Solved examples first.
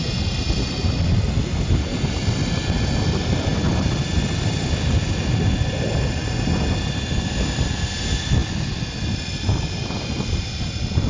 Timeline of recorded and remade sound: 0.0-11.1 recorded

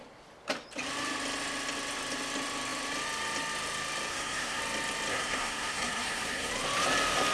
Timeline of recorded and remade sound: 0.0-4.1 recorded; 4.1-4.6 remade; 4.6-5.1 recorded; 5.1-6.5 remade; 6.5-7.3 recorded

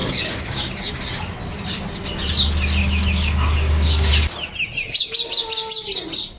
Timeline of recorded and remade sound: 0.0-0.9 remade; 0.9-2.8 recorded; 2.8-4.1 remade; 4.1-6.4 recorded

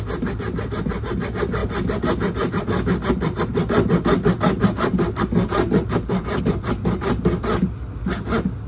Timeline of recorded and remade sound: 0.0-8.7 recorded